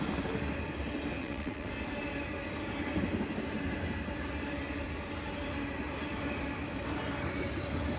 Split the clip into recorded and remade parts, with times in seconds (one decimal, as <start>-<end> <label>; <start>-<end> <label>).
0.0-1.2 recorded; 1.2-1.7 remade; 1.7-8.0 recorded